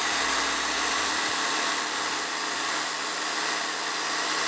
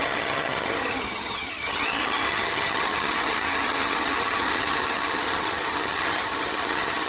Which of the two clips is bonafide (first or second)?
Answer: first